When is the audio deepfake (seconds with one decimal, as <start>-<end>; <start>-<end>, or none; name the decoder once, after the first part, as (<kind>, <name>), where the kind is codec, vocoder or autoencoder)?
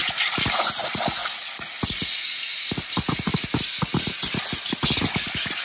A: none